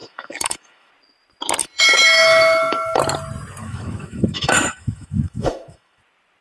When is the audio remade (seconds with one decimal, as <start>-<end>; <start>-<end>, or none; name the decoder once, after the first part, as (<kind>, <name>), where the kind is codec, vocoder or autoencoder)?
0.0-0.9 (autoencoder, DAC-VAE); 1.6-3.0; 3.6-6.0